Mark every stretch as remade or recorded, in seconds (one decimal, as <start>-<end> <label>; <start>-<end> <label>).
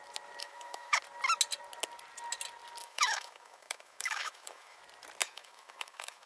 0.0-0.4 recorded; 0.4-1.0 remade; 1.0-2.8 recorded; 2.8-4.8 remade; 4.8-5.2 recorded; 5.2-6.3 remade